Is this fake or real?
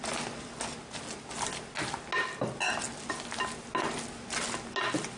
real